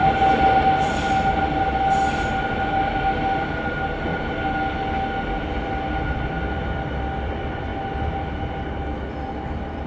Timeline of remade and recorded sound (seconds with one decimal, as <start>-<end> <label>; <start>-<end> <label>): 0.0-9.9 recorded